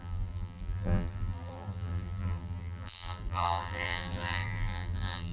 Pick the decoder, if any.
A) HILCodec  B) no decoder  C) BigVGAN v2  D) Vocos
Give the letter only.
C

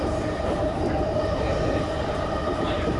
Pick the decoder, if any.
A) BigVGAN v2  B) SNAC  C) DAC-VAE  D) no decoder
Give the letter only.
A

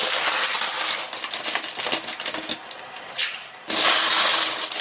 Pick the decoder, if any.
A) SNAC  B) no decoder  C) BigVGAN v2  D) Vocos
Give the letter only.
B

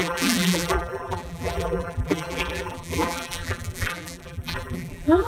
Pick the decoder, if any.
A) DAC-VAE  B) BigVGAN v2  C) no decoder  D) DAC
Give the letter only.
B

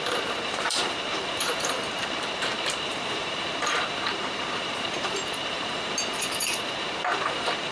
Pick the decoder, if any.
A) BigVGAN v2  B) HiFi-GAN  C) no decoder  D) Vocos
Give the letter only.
A